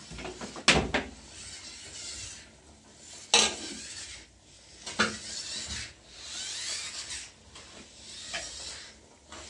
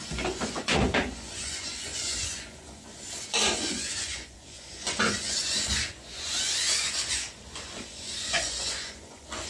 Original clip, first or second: first